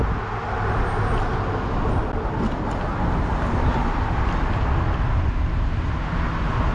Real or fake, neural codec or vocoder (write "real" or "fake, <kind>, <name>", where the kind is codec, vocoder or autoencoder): real